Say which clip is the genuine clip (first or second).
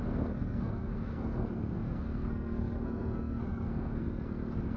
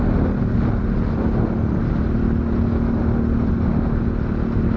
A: second